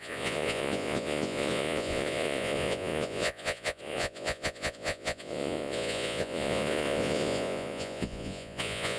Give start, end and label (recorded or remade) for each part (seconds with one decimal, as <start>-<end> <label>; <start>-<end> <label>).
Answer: 0.0-9.0 remade